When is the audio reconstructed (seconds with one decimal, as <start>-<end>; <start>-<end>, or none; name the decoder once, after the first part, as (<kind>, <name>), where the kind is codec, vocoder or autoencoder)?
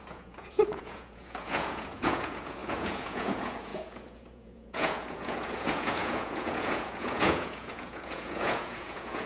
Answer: 0.0-9.3 (vocoder, Vocos)